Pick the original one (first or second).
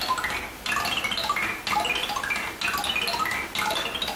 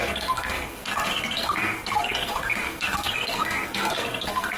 first